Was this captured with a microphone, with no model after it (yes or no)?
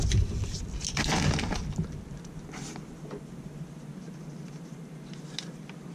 yes